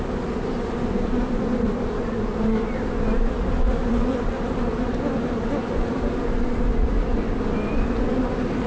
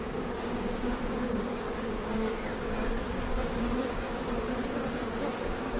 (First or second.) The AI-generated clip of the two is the second